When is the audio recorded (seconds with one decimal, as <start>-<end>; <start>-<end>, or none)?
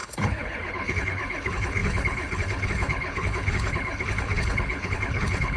none